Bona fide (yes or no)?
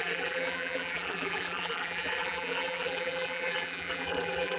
no